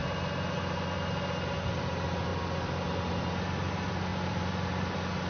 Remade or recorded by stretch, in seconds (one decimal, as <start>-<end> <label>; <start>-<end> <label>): 0.0-4.1 recorded; 4.1-5.3 remade